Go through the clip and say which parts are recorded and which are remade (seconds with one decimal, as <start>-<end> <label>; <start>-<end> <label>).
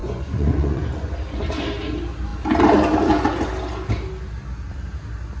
0.0-1.1 remade; 1.1-5.4 recorded